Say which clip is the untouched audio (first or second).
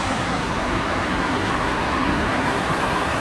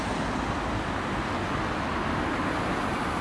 second